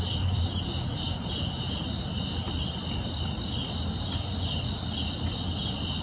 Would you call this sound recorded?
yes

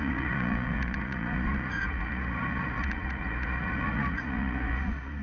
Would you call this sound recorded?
no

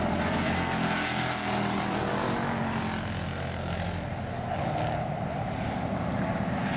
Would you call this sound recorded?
yes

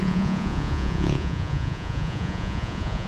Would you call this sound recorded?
no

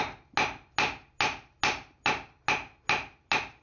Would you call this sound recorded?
yes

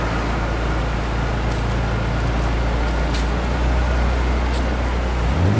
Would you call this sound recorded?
yes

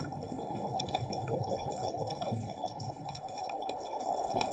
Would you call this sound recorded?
no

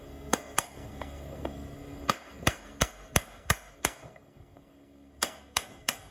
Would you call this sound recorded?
no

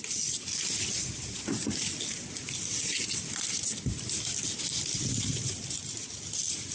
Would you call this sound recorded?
yes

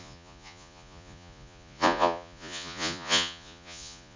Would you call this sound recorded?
no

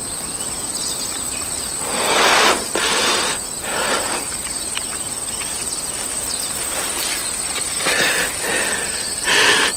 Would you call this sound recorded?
yes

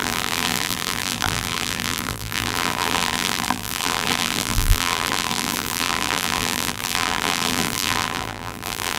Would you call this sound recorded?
no